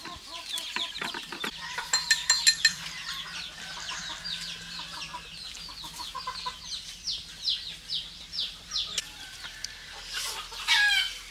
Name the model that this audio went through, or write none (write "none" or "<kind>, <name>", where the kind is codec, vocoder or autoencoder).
none